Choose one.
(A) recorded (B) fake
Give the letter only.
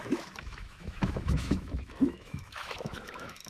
B